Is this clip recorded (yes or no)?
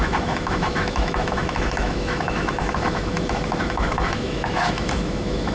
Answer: no